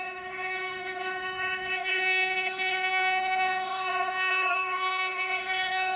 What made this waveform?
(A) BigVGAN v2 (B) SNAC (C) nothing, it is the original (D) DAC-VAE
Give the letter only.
D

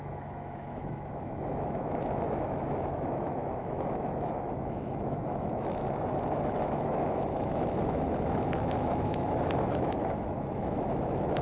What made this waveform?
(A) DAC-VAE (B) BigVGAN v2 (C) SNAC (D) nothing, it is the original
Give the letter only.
A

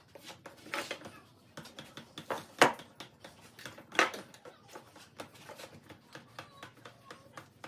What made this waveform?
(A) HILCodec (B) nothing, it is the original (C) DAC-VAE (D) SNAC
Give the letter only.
B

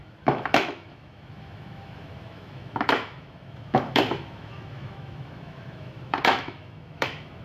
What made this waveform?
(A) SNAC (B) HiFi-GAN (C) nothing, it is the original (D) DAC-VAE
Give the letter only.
D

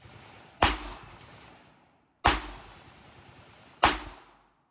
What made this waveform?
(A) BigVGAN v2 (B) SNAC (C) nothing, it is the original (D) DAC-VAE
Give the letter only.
C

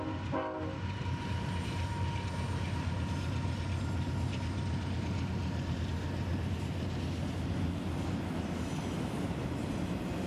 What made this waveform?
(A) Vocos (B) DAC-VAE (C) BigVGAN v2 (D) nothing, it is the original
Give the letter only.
D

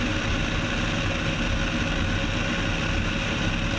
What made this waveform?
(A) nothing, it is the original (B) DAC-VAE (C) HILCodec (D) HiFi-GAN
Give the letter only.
A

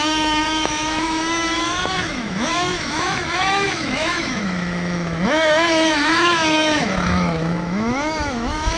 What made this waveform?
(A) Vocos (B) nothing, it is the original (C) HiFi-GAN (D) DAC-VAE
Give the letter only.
D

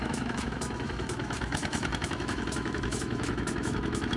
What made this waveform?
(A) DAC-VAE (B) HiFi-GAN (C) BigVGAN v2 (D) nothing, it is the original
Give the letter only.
A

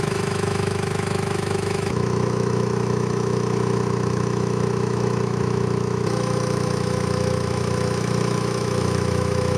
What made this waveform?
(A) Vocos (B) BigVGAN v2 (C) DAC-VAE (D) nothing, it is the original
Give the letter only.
C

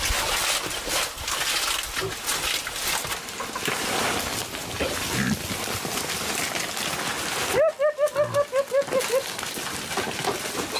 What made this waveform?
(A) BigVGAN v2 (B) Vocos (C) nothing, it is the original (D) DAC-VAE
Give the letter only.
C